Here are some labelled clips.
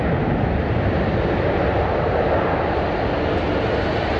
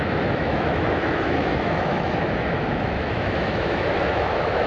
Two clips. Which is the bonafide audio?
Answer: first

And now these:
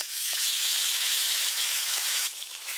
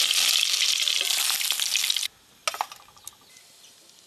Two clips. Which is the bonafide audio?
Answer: second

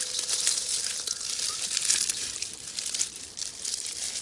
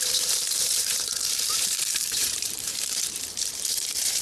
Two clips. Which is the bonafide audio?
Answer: first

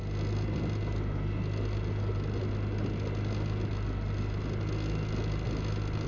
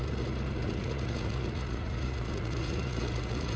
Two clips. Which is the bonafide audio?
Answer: first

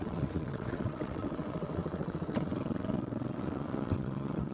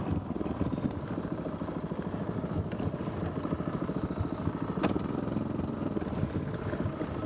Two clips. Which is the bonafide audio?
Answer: second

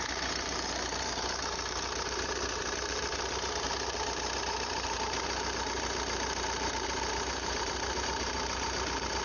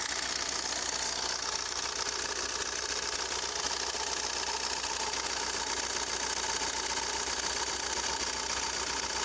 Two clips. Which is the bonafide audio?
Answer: second